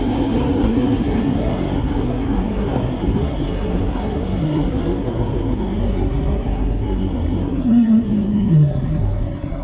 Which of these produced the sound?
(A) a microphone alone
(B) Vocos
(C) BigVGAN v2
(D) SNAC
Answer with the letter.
D